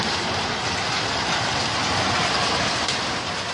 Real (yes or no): yes